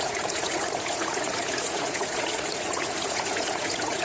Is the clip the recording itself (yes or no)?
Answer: no